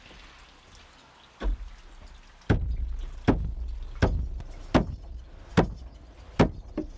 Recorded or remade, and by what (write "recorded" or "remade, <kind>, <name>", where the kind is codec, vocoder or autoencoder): recorded